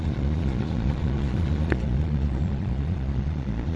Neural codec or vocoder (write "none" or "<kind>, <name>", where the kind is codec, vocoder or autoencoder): vocoder, Vocos